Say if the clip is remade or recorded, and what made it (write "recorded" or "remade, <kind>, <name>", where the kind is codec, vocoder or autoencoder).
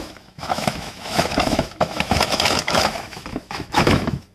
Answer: remade, autoencoder, DAC-VAE